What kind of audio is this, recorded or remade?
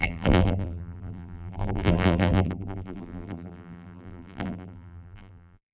remade